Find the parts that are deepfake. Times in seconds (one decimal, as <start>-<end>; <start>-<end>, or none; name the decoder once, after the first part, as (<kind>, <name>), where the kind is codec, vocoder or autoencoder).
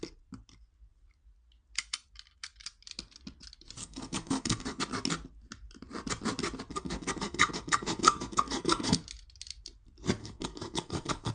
3.8-4.8 (codec, SNAC); 6.7-9.0; 10.2-11.3